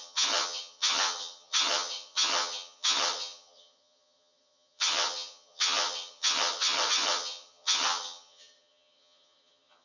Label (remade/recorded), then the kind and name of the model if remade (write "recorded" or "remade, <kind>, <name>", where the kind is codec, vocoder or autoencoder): remade, vocoder, HiFi-GAN